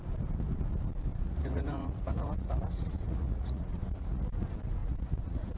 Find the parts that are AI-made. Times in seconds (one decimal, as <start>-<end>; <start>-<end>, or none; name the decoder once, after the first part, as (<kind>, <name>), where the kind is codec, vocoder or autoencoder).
1.1-4.2 (vocoder, Vocos); 4.8-5.6